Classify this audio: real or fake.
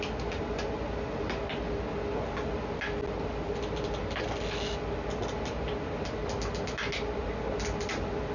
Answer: real